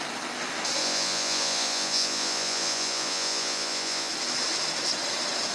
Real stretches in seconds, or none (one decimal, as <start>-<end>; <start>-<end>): 0.0-0.8; 4.1-5.5